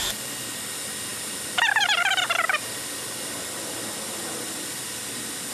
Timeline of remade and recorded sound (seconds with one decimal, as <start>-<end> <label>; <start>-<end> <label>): 0.0-5.5 recorded